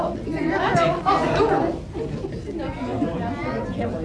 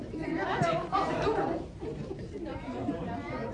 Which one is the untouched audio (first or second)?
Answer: first